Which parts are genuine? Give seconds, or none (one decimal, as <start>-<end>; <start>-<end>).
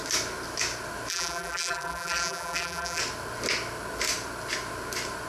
0.0-1.1; 3.0-5.3